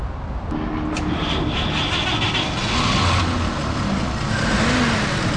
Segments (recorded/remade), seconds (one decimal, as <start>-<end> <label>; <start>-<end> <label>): 0.0-5.4 recorded